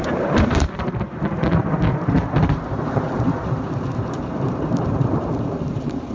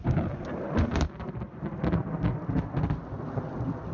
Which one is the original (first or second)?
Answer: second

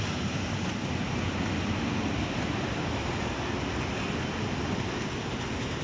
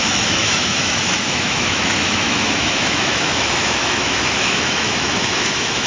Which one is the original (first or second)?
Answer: first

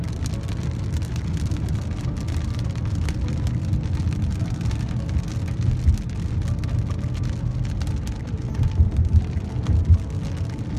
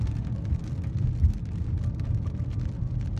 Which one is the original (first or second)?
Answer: first